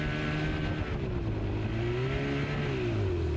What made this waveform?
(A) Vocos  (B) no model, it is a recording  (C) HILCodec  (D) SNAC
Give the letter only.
B